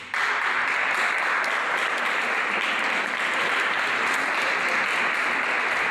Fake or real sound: real